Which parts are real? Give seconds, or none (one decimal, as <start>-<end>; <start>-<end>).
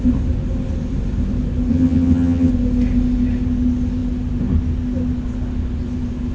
0.0-1.7; 2.5-6.3